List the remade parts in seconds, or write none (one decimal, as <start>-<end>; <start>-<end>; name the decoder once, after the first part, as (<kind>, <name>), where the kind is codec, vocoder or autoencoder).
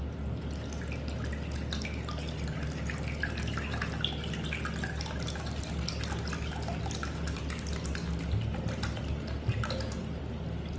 9.5-10.8 (vocoder, BigVGAN v2)